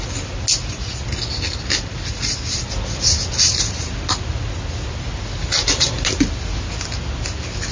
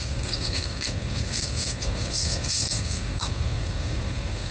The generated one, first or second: second